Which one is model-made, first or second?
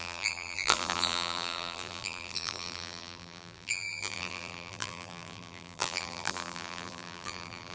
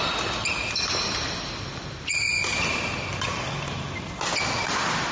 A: first